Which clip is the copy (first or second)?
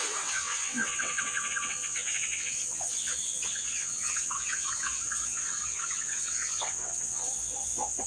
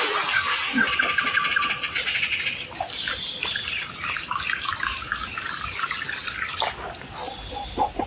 first